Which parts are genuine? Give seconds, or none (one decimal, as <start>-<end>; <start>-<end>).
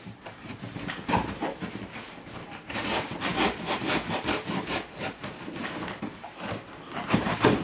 none